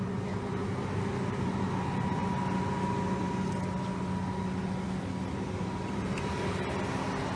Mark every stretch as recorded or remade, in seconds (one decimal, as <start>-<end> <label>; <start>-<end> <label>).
0.0-7.4 recorded